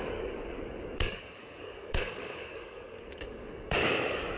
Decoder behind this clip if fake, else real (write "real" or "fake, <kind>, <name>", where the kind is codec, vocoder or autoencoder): fake, codec, DAC